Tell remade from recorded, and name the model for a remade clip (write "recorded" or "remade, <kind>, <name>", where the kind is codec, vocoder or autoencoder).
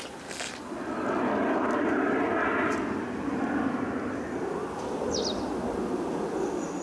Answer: recorded